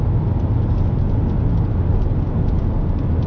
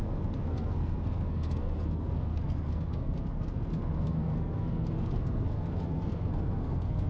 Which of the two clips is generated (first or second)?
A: second